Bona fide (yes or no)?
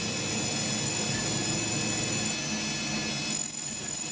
yes